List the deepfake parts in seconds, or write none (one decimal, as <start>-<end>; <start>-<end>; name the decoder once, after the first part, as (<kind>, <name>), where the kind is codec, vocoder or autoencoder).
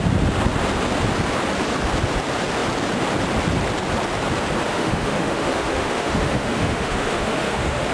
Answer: 4.7-7.9 (autoencoder, DAC-VAE)